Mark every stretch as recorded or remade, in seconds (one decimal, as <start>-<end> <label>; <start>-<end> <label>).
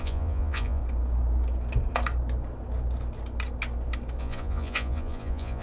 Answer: 0.0-0.8 remade; 0.8-4.2 recorded; 4.2-5.6 remade